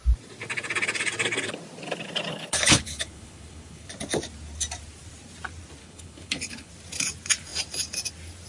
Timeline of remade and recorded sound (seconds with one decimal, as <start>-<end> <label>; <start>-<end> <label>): 0.0-2.3 recorded; 2.3-3.9 remade; 3.9-5.8 recorded; 5.8-6.7 remade; 6.7-8.5 recorded

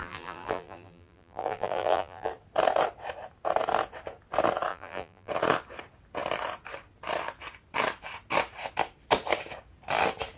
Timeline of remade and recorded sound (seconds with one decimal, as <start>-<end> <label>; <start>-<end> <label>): 0.0-2.3 remade; 2.3-4.7 recorded; 4.7-5.3 remade; 5.3-10.4 recorded

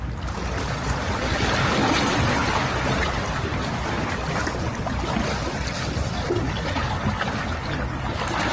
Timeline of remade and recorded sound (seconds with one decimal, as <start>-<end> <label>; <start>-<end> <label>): 0.0-8.5 recorded

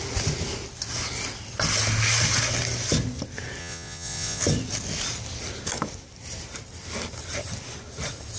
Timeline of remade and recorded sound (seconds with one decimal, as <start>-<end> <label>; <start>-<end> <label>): 0.0-3.6 recorded; 3.6-4.4 remade; 4.4-8.4 recorded